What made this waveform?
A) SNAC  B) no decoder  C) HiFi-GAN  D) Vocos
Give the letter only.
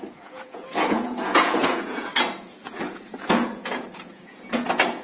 D